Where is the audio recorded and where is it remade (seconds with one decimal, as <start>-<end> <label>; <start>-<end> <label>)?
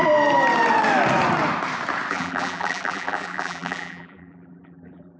0.0-2.1 recorded; 2.1-5.2 remade